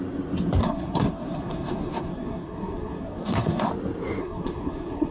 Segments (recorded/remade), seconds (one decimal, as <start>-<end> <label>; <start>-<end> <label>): 0.0-0.6 recorded; 0.6-3.7 remade; 3.7-4.2 recorded; 4.2-5.1 remade